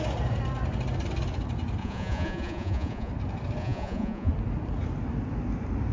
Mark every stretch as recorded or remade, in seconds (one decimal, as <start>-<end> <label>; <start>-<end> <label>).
0.0-1.8 recorded; 1.8-3.1 remade; 3.1-3.6 recorded; 3.6-4.3 remade; 4.3-5.9 recorded